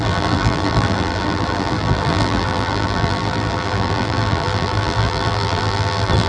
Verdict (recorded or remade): remade